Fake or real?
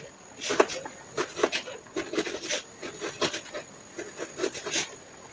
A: real